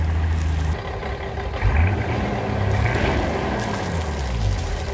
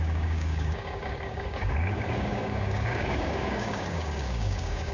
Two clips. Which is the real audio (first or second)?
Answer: first